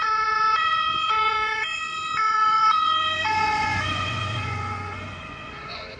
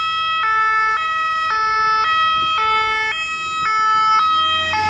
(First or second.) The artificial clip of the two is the first